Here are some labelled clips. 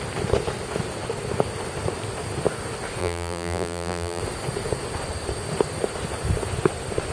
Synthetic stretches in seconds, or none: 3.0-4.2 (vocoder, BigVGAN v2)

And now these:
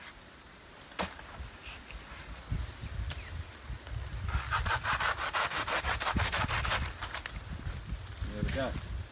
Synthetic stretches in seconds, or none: none

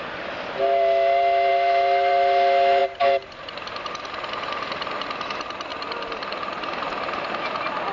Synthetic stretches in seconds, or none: none

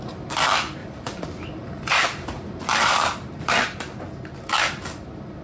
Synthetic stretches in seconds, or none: 0.8-4.0 (vocoder, BigVGAN v2)

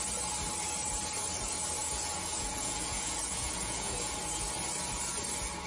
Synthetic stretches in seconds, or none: 1.8-4.2 (vocoder, Vocos)

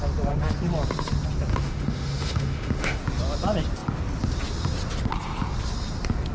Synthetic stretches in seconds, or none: 1.5-3.0 (autoencoder, DAC-VAE)